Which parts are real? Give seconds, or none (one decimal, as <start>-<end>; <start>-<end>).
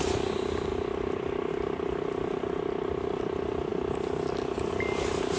0.0-5.4